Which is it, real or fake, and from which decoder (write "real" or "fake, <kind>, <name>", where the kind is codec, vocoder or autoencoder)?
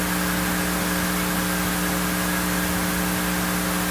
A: real